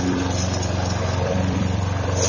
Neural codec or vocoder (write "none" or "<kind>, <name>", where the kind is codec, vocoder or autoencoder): vocoder, BigVGAN v2